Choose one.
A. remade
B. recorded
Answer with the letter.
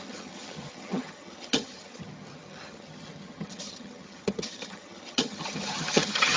A